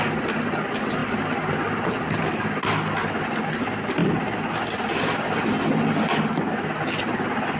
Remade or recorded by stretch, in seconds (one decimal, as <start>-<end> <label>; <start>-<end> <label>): 0.0-7.6 recorded

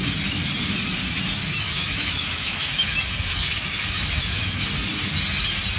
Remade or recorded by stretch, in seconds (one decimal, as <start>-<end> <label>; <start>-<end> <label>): 0.0-1.4 recorded; 1.4-4.6 remade; 4.6-5.8 recorded

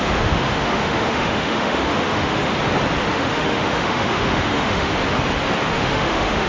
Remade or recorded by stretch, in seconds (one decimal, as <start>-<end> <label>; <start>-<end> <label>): 0.0-2.5 remade; 2.5-3.1 recorded; 3.1-4.9 remade; 4.9-5.7 recorded; 5.7-6.5 remade

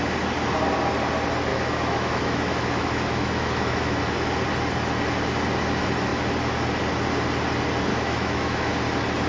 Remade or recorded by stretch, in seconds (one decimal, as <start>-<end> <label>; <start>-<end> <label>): 0.0-1.5 recorded; 1.5-4.0 remade; 4.0-7.9 recorded; 7.9-8.7 remade; 8.7-9.3 recorded

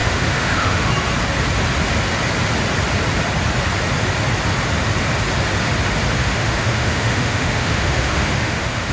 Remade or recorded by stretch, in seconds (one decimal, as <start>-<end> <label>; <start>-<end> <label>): 0.0-0.9 remade; 0.9-6.2 recorded; 6.2-8.9 remade